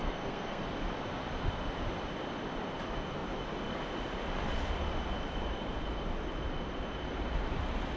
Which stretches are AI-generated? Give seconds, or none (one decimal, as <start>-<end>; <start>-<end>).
0.0-0.6